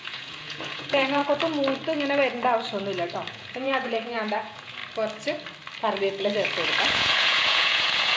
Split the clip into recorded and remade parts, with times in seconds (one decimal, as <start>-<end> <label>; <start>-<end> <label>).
0.0-1.2 remade; 1.2-3.3 recorded; 3.3-4.8 remade; 4.8-6.9 recorded; 6.9-8.2 remade